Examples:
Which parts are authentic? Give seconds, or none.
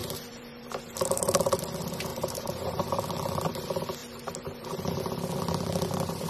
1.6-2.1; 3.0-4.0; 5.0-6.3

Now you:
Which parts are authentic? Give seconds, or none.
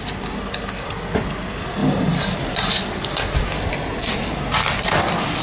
0.0-1.8; 2.8-3.5; 4.5-5.4